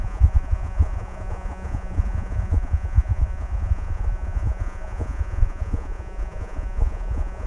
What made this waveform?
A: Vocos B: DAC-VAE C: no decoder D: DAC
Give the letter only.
A